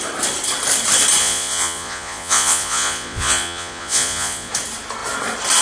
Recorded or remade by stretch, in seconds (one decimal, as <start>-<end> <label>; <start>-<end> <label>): 0.0-1.2 recorded; 1.2-4.5 remade; 4.5-5.6 recorded